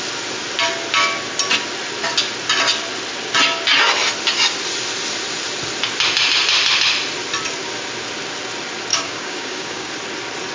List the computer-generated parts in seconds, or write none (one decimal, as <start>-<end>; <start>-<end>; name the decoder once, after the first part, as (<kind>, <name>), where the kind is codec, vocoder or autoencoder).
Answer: 8.9-9.9 (codec, DAC)